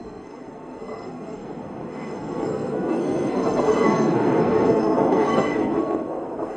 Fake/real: fake